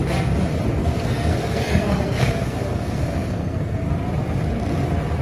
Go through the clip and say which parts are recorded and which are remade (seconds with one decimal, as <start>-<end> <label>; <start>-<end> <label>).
0.0-0.8 recorded; 0.8-3.9 remade; 3.9-5.2 recorded

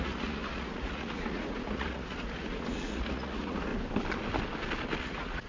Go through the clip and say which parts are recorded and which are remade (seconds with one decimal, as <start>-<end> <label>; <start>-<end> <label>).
0.0-3.7 remade; 3.7-5.0 recorded; 5.0-5.5 remade

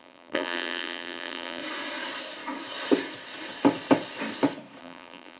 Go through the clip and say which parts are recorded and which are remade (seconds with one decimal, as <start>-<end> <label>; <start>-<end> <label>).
0.0-1.6 remade; 1.6-4.8 recorded; 4.8-5.4 remade

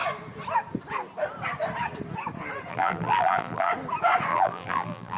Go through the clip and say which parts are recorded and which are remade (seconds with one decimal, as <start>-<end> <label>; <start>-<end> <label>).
0.0-2.7 recorded; 2.7-3.7 remade; 3.7-4.3 recorded; 4.3-5.2 remade

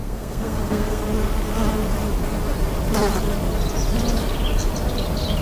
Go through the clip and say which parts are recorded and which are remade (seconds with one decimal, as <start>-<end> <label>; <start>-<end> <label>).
0.0-1.0 remade; 1.0-5.4 recorded

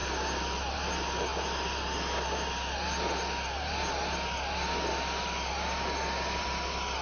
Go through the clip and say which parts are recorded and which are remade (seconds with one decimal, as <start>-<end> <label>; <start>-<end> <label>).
0.0-7.0 recorded

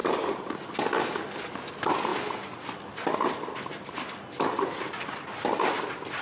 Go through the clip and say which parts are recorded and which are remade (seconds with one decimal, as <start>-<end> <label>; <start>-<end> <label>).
0.0-6.2 recorded

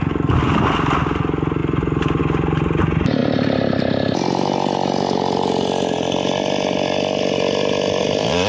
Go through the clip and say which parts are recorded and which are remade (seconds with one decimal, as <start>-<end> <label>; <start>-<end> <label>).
0.0-1.6 recorded; 1.6-2.2 remade; 2.2-3.2 recorded; 3.2-8.0 remade; 8.0-8.5 recorded